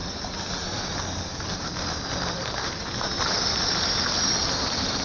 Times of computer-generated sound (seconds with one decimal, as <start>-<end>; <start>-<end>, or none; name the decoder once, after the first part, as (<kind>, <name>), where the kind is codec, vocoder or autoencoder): none